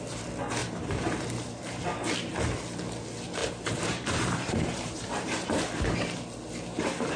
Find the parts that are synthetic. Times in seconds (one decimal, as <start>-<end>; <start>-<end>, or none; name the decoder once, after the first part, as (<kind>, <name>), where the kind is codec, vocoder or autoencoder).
0.6-1.8 (vocoder, BigVGAN v2); 3.4-5.6

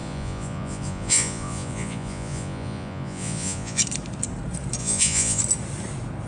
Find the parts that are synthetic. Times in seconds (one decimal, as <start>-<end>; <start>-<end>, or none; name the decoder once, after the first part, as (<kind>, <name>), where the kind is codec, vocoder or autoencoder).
0.0-3.8 (vocoder, Vocos); 4.8-5.4